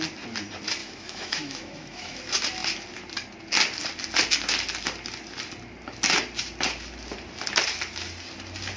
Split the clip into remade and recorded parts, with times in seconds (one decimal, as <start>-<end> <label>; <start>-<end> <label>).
0.0-0.8 recorded; 0.8-2.2 remade; 2.2-8.8 recorded